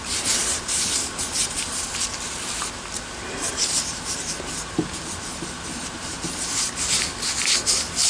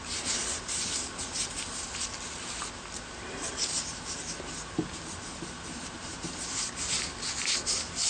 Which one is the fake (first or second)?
first